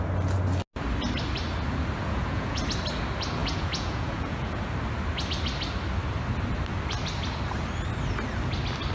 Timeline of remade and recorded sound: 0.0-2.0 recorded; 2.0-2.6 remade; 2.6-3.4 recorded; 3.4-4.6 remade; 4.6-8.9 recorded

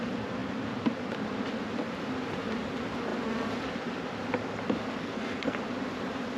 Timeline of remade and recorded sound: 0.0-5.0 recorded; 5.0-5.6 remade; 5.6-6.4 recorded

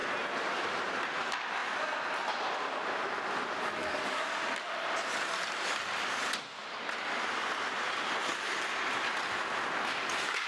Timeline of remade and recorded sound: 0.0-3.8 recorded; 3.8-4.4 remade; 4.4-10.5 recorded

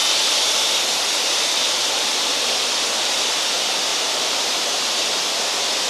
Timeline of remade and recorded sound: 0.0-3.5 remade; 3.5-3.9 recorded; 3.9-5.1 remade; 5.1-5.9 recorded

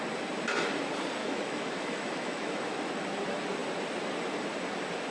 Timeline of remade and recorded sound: 0.0-1.2 recorded; 1.2-2.6 remade; 2.6-5.1 recorded

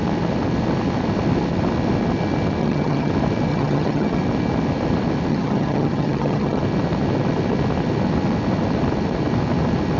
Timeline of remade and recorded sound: 0.0-2.6 recorded; 2.6-3.1 remade; 3.1-3.5 recorded; 3.5-4.2 remade; 4.2-5.3 recorded; 5.3-6.6 remade; 6.6-10.0 recorded

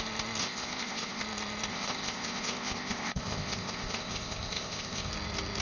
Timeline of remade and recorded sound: 0.0-0.4 recorded; 0.4-1.2 remade; 1.2-1.7 recorded; 1.7-5.1 remade; 5.1-5.6 recorded

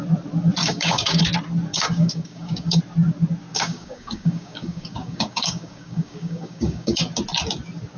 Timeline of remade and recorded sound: 0.0-0.6 recorded; 0.6-1.2 remade; 1.2-1.7 recorded; 1.7-2.8 remade; 2.8-3.5 recorded; 3.5-7.0 remade; 7.0-8.0 recorded